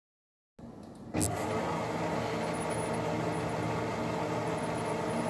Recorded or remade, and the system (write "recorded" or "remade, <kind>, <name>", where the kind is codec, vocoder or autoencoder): recorded